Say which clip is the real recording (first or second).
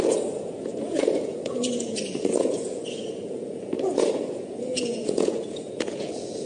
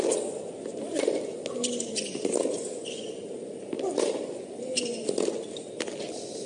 second